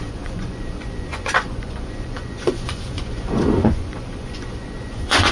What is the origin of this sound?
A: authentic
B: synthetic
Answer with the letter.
B